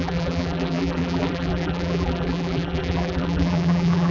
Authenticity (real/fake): fake